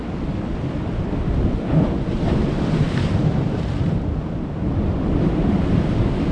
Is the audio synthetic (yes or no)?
no